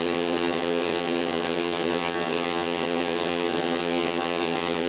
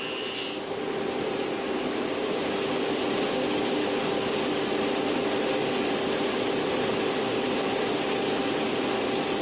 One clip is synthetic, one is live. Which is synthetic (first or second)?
first